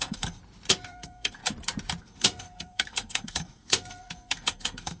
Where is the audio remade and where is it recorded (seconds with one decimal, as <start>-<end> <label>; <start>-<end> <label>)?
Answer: 0.0-0.4 remade; 0.4-0.9 recorded; 0.9-1.4 remade; 1.4-2.0 recorded; 2.0-5.0 remade